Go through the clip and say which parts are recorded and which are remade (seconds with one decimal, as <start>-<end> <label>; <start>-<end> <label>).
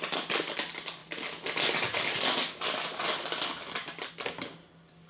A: 0.0-5.1 recorded